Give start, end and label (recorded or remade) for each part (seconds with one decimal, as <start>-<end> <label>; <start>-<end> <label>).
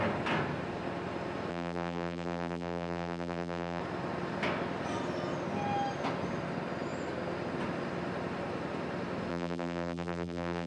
0.0-1.5 recorded; 1.5-3.8 remade; 3.8-9.3 recorded; 9.3-10.7 remade